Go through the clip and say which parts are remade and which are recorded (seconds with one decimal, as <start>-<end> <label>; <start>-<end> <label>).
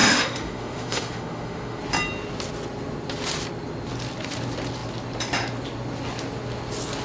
0.0-1.8 remade; 1.8-7.0 recorded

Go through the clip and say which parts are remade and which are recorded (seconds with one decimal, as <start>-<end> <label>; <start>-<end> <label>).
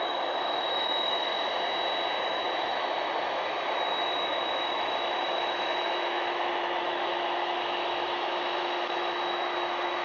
0.0-1.3 remade; 1.3-2.2 recorded; 2.2-10.0 remade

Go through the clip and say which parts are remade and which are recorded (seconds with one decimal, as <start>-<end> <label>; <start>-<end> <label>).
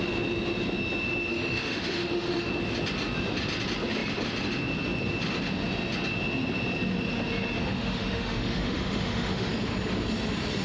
0.0-1.3 recorded; 1.3-2.5 remade; 2.5-7.6 recorded; 7.6-9.5 remade; 9.5-10.6 recorded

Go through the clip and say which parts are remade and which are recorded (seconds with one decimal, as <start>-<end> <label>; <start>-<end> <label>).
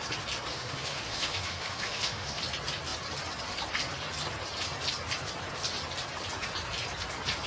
0.0-0.5 recorded; 0.5-2.4 remade; 2.4-7.5 recorded